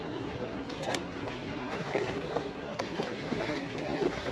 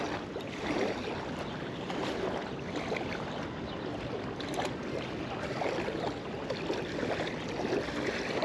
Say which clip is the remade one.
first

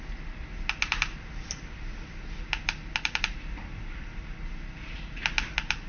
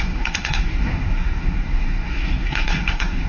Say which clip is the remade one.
second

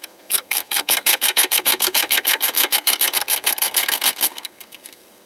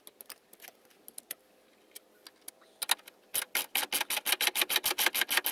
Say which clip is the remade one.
first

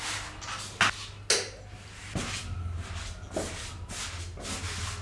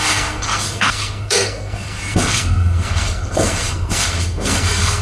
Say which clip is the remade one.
second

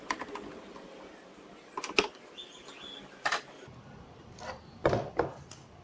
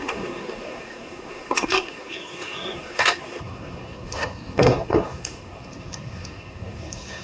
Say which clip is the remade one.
second